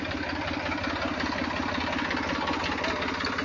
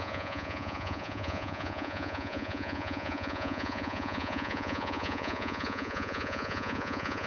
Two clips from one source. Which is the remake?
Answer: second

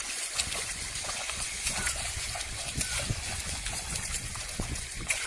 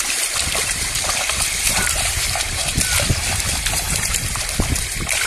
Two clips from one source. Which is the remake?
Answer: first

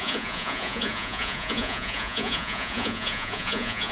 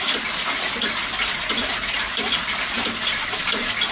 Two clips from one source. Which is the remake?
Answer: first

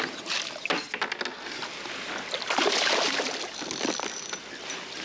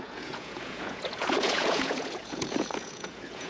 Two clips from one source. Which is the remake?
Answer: second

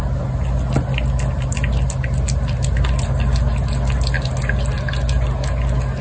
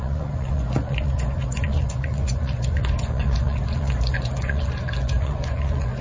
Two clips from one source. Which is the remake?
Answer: second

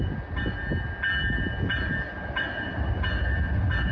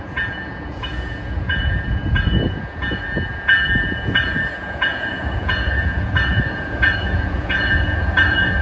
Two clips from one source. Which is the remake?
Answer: second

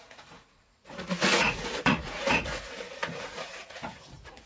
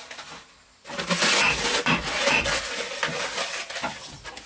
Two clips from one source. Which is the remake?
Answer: first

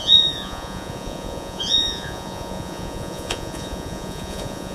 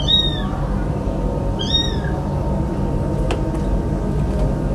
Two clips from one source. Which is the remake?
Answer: first